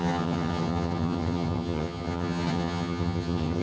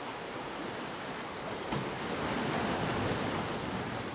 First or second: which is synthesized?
first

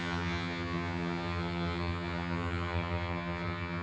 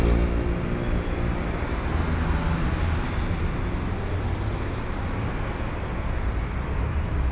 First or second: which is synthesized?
first